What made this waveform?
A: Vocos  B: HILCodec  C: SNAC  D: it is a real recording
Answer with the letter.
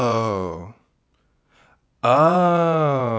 A